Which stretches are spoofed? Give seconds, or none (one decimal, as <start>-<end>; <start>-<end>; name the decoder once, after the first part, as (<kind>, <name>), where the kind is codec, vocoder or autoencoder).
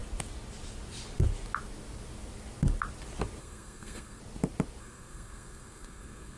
3.4-4.2 (codec, SNAC); 4.8-6.4